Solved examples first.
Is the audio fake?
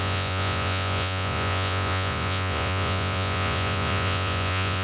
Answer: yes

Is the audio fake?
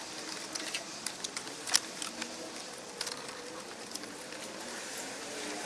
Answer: no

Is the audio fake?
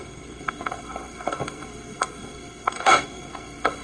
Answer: yes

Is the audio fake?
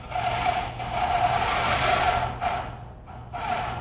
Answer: no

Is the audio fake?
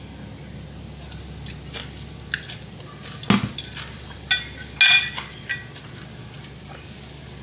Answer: no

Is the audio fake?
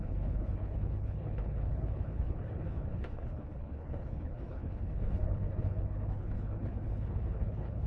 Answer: yes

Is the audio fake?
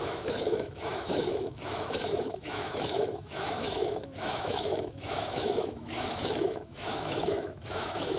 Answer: yes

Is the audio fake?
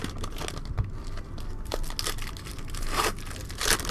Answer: no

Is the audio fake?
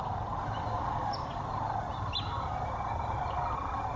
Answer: no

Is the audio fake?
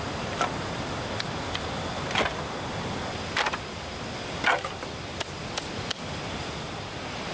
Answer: no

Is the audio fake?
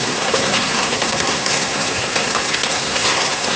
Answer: yes